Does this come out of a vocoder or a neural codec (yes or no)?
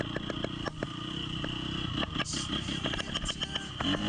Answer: no